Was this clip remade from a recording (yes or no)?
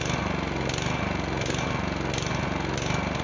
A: no